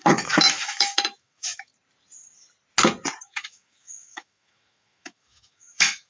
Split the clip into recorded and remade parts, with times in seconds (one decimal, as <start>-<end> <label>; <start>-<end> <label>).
0.0-1.7 remade; 1.7-3.2 recorded; 3.2-6.1 remade